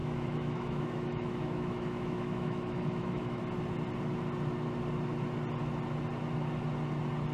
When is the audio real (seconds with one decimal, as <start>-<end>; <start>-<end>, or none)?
3.4-7.3